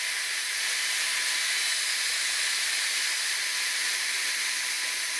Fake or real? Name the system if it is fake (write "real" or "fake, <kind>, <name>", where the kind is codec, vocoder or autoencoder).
real